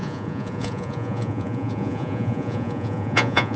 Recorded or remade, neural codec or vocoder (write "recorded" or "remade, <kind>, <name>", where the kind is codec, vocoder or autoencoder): remade, vocoder, Vocos